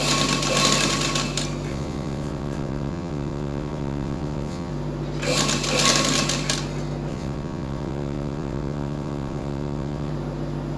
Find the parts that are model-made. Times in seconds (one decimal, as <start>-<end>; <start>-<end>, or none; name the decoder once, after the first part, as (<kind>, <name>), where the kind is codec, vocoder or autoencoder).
1.7-4.7 (vocoder, WaveNeXt); 7.1-10.1